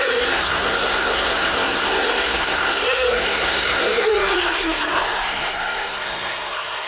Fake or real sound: fake